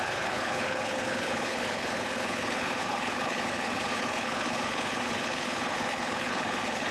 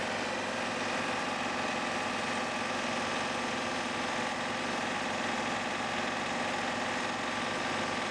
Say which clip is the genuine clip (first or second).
second